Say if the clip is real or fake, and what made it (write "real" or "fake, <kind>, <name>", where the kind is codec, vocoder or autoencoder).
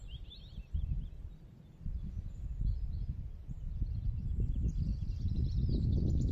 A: real